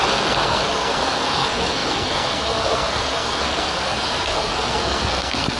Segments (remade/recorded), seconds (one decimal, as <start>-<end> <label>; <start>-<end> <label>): 0.0-5.6 remade